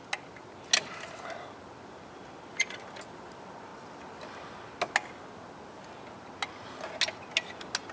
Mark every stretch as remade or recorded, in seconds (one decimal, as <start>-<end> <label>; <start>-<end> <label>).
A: 0.0-7.9 recorded